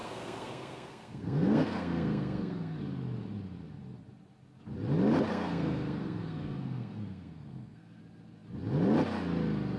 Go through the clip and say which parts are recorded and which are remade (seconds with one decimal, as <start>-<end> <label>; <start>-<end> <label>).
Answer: 0.0-2.8 remade; 2.8-5.3 recorded; 5.3-8.0 remade; 8.0-9.8 recorded